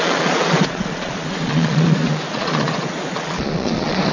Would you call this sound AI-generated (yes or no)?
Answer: yes